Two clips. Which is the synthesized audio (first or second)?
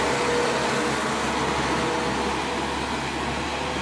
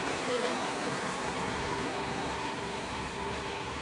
second